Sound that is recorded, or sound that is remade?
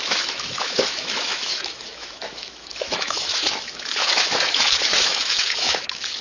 remade